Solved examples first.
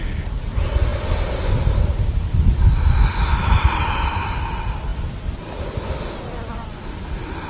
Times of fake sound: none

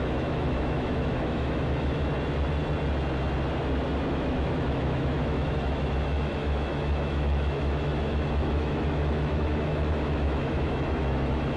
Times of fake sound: 0.0-2.1; 4.1-11.6